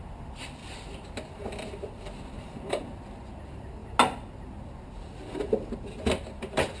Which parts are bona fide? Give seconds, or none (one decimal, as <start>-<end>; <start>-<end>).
0.0-0.6; 2.8-6.8

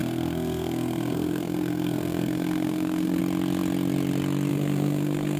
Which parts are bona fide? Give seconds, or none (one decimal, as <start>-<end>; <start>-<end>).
3.2-4.5